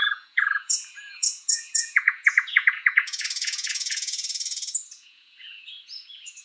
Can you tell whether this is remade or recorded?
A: remade